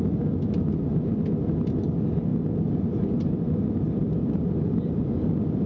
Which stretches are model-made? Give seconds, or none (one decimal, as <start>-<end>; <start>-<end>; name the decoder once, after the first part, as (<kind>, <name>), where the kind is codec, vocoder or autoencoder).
none